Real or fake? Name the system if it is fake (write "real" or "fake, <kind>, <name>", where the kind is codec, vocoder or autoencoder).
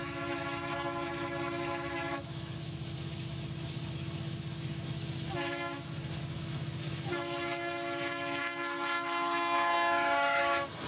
fake, autoencoder, DAC-VAE